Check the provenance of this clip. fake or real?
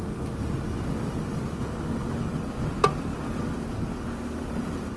real